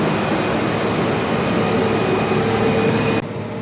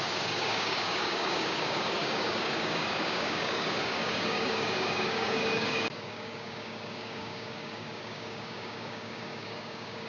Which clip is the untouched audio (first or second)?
first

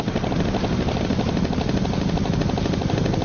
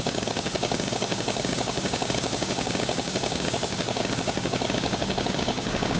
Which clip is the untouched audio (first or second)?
first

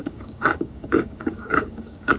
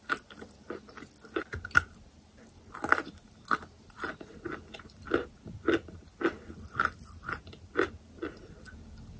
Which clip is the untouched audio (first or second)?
second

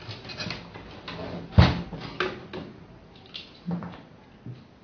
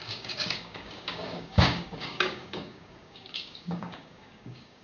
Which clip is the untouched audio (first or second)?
first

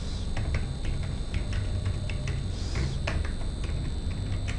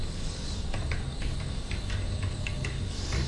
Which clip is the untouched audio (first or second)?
first